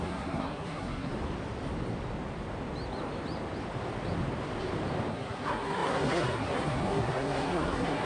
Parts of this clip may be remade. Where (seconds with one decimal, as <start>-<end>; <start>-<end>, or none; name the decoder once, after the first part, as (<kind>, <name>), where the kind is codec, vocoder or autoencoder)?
0.0-1.1 (codec, SNAC); 5.1-8.1